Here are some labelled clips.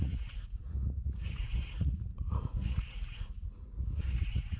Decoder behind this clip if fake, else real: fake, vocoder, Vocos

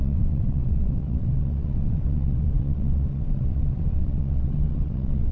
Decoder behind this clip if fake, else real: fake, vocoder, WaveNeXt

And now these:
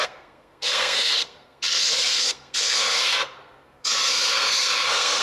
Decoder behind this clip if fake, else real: fake, codec, SNAC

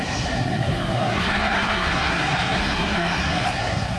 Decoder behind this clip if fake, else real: fake, codec, SNAC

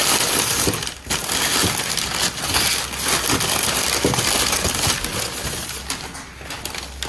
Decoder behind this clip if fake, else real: real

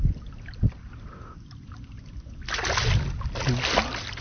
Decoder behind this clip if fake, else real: real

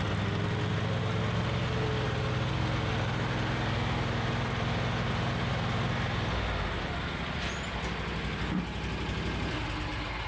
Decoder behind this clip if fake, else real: real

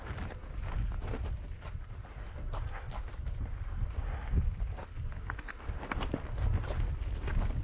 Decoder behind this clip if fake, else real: real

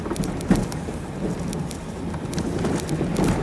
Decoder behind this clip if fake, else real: real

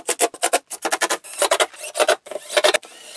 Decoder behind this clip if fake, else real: real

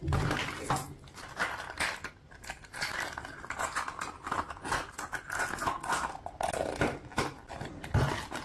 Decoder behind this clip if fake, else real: real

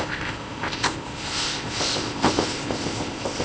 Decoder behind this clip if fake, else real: fake, codec, ZipCodec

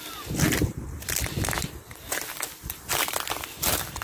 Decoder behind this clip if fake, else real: fake, vocoder, BigVGAN v2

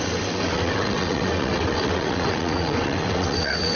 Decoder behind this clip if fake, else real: fake, vocoder, WaveNeXt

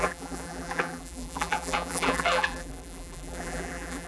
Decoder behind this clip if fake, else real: fake, vocoder, BigVGAN v2